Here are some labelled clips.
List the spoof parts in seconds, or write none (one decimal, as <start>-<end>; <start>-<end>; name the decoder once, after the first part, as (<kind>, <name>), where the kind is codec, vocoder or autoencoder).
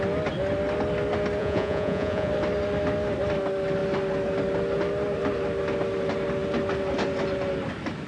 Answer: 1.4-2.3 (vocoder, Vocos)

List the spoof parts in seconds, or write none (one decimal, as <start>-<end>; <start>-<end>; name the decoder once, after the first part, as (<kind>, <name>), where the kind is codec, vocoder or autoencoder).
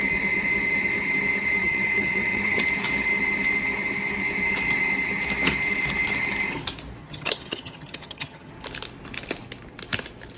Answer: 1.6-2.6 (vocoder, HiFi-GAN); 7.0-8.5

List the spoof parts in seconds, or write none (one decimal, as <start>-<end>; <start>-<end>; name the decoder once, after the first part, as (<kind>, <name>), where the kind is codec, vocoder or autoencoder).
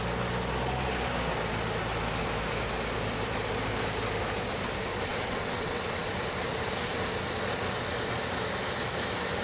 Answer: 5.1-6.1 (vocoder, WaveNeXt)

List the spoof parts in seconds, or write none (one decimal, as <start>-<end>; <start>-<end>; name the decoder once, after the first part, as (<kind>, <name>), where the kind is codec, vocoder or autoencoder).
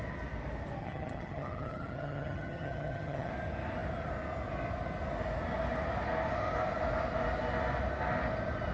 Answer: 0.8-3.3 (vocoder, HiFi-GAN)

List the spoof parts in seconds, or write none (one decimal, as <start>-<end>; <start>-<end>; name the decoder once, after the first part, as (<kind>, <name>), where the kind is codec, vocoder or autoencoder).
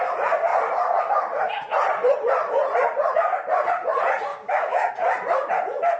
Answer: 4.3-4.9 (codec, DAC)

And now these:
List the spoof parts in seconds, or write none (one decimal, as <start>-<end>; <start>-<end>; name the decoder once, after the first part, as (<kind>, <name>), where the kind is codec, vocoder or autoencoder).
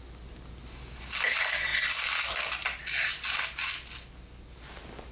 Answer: none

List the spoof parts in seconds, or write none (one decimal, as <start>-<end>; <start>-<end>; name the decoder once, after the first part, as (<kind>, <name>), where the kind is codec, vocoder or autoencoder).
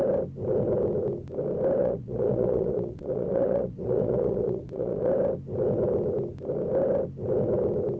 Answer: 1.8-5.1 (vocoder, Vocos)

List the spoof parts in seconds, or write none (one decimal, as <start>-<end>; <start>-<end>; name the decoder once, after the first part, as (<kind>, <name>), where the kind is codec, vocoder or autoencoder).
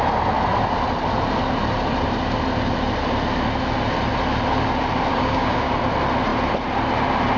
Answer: 5.1-5.7 (codec, DAC)